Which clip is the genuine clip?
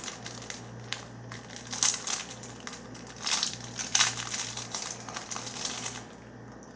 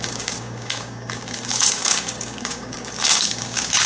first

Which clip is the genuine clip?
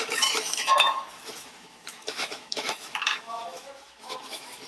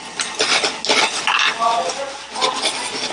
second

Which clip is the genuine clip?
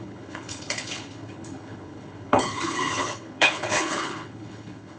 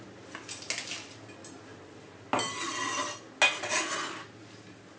second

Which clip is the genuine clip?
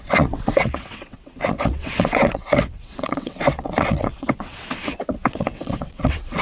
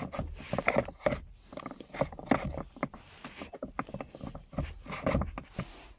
second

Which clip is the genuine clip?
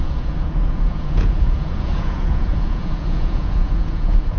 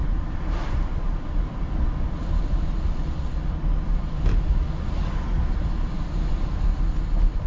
second